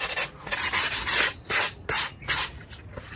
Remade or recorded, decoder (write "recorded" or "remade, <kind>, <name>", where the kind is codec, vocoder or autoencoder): recorded